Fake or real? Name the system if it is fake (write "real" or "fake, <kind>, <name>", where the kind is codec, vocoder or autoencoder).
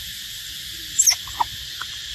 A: real